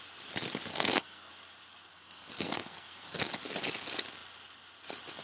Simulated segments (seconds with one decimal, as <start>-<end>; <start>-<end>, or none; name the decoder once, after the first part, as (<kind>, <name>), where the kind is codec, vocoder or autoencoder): 0.7-1.3 (codec, SNAC); 1.9-3.3